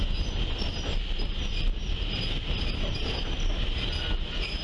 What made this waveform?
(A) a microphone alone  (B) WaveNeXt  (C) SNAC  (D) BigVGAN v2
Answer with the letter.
A